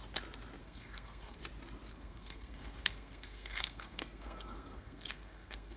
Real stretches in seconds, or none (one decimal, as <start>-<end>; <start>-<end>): 0.0-0.6; 1.4-1.9